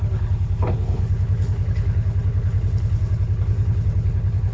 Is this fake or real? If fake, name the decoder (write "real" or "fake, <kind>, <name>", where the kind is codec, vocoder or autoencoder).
fake, codec, HILCodec